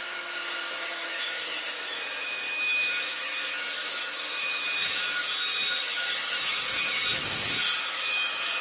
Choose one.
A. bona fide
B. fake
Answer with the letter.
B